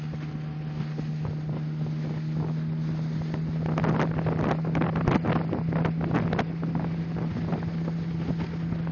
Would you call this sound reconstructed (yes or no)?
no